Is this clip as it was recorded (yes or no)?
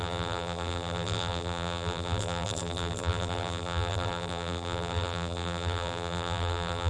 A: no